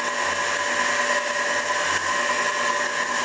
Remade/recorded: recorded